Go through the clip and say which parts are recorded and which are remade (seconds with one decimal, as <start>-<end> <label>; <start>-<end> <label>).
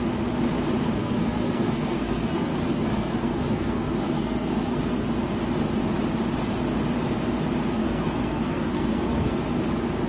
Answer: 0.0-1.0 recorded; 1.0-5.1 remade; 5.1-7.8 recorded; 7.8-9.4 remade; 9.4-10.1 recorded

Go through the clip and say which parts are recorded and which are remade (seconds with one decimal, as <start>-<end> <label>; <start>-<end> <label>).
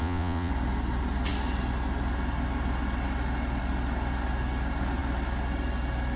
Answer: 0.0-0.5 remade; 0.5-6.2 recorded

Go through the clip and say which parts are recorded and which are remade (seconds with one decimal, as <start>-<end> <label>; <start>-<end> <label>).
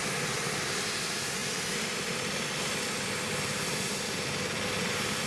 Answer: 0.0-5.3 recorded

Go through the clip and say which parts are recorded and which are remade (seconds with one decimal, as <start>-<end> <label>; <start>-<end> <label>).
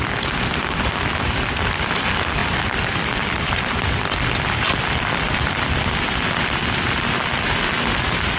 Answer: 0.0-8.4 recorded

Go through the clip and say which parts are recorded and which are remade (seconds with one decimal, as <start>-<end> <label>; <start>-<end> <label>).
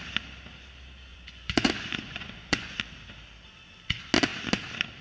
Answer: 0.0-1.1 recorded; 1.1-2.8 remade; 2.8-5.0 recorded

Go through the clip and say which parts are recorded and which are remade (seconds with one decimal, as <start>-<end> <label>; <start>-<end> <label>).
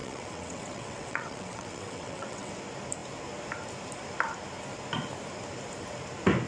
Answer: 0.0-2.5 remade; 2.5-6.5 recorded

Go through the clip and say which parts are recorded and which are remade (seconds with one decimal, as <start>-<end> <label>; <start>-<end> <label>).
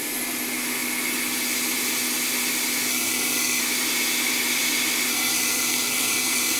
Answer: 0.0-2.9 recorded; 2.9-3.6 remade; 3.6-5.1 recorded; 5.1-6.6 remade